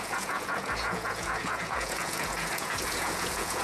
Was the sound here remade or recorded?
remade